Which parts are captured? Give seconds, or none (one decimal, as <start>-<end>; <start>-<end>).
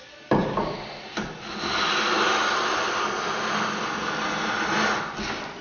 0.0-5.6